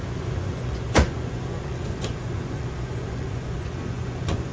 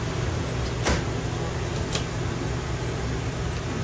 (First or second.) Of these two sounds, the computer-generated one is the first